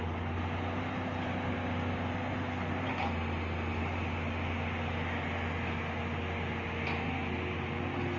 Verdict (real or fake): real